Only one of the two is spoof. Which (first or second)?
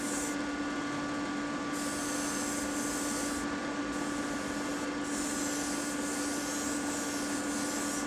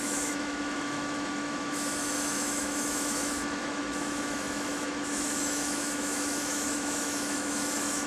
second